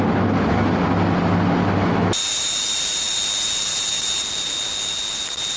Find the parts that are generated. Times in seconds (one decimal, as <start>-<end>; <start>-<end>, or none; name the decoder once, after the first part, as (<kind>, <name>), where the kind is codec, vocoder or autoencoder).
none